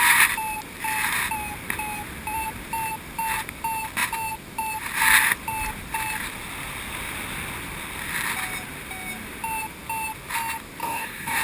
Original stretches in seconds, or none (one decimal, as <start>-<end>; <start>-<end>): 0.0-10.8

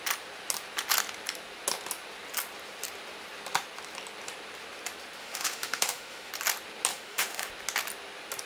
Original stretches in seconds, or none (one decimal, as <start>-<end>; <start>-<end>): 0.0-5.2; 6.3-6.9; 7.5-8.5

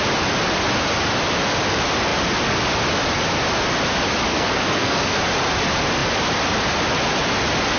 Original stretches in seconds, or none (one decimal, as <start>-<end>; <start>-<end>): 0.0-4.3; 5.2-7.8

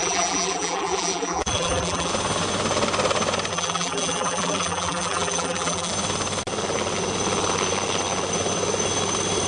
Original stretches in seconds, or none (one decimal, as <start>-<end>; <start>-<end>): 2.1-3.5; 5.9-9.5

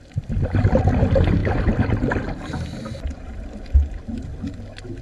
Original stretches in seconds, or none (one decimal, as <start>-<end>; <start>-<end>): 0.0-5.0

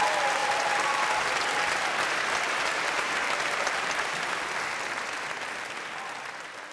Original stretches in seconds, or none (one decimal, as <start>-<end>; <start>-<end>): 0.0-0.4; 4.4-6.7

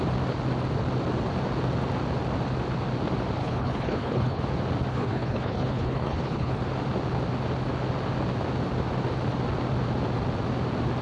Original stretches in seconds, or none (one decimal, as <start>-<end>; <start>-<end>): 0.0-3.4; 4.4-4.9; 6.6-11.0

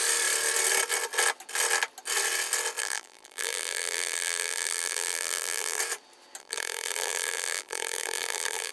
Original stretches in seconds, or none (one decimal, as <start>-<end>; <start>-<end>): 0.0-2.8; 5.8-6.4